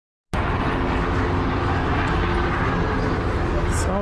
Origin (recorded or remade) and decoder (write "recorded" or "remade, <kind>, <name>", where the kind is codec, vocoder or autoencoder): recorded